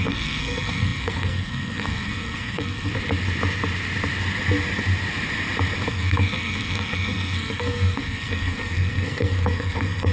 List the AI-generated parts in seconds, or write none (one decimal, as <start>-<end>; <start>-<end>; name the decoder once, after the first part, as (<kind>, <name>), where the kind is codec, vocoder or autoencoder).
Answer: 0.0-2.9 (codec, SNAC); 5.9-10.1